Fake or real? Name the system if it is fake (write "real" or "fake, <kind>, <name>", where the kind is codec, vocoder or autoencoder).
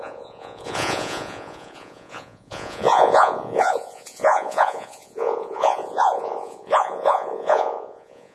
fake, vocoder, Vocos